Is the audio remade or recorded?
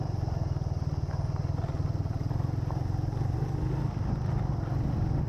recorded